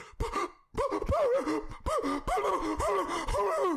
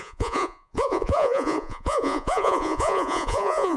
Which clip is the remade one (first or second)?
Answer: second